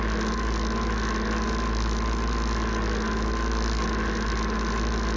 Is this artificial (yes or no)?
no